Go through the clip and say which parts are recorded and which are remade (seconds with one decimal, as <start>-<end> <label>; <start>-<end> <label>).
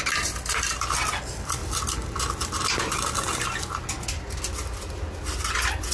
0.0-5.9 recorded